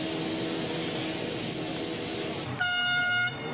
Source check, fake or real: real